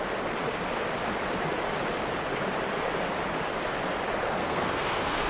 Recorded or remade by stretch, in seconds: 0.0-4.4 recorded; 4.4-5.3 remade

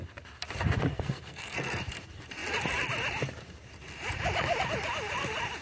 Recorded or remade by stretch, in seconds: 0.0-0.9 recorded; 0.9-1.8 remade; 1.8-5.6 recorded

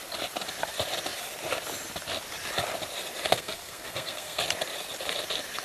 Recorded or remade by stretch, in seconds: 0.0-3.3 recorded; 3.3-4.4 remade; 4.4-5.6 recorded